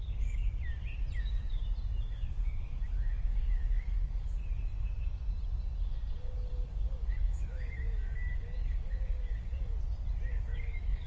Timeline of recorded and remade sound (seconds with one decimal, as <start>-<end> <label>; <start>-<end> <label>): 0.0-0.4 remade; 0.4-1.2 recorded; 1.2-1.6 remade; 1.6-2.1 recorded; 2.1-4.4 remade; 4.4-6.2 recorded; 6.2-9.7 remade; 9.7-10.3 recorded; 10.3-11.1 remade